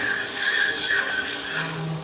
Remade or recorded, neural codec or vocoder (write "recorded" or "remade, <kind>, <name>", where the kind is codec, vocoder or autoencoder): remade, codec, DAC